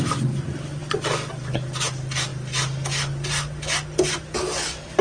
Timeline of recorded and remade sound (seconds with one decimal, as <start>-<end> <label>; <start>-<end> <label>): 0.0-5.0 recorded